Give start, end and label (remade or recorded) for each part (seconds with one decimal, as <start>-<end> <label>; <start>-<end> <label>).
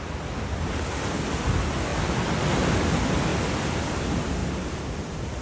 0.0-1.9 recorded; 1.9-2.8 remade; 2.8-4.4 recorded; 4.4-5.4 remade